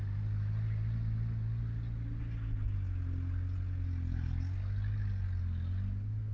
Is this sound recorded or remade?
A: recorded